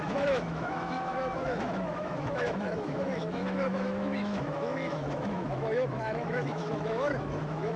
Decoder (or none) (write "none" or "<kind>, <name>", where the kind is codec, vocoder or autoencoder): autoencoder, DAC-VAE